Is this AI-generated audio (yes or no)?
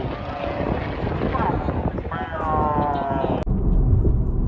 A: no